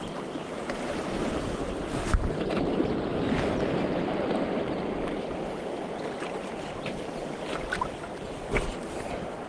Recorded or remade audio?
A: recorded